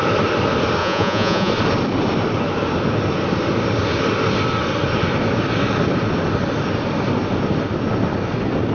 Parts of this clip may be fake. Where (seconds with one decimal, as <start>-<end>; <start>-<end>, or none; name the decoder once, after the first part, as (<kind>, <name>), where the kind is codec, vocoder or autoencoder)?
0.8-1.5 (vocoder, Vocos)